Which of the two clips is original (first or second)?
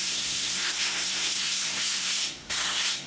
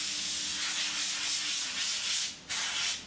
second